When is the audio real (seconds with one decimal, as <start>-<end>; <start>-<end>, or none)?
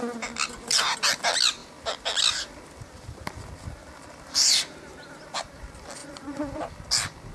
0.0-6.0; 6.7-7.3